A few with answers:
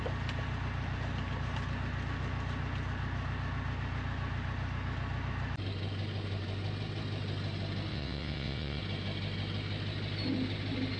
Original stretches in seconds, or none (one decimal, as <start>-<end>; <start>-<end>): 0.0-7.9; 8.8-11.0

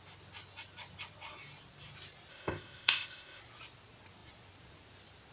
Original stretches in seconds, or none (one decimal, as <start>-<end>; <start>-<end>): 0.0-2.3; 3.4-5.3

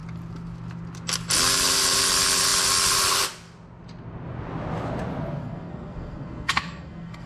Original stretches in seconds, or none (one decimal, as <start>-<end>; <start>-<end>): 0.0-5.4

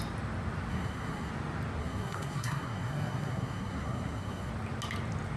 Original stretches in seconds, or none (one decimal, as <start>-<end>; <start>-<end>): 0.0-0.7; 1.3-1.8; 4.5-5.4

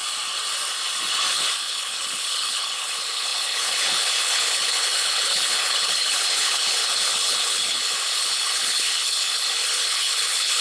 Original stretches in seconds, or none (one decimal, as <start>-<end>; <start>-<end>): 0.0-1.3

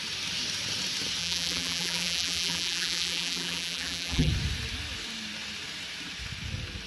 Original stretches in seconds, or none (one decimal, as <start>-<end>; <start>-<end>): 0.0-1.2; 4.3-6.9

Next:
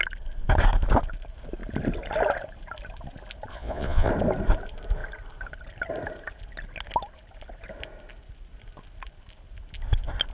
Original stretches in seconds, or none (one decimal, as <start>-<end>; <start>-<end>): 0.0-3.5; 4.1-10.3

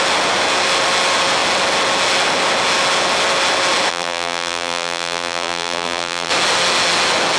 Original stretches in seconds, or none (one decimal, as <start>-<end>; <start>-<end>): 0.0-3.9; 6.3-7.4